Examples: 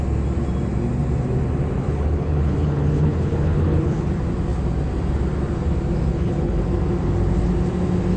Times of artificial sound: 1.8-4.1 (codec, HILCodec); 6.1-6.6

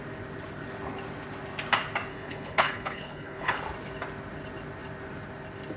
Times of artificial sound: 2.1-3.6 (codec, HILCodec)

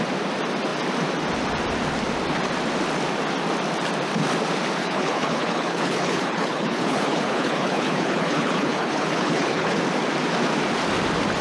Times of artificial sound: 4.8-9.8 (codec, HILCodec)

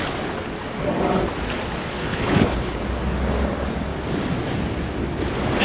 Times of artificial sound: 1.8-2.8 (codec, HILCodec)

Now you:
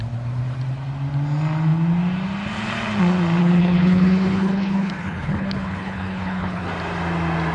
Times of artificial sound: 3.4-6.7 (codec, HILCodec)